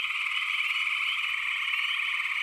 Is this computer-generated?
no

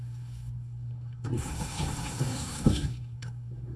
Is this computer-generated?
yes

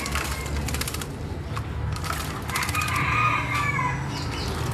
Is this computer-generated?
no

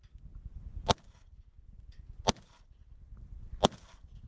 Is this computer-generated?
no